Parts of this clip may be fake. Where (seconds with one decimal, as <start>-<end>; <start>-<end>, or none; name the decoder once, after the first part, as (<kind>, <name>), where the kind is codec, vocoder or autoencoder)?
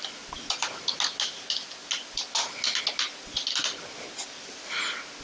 none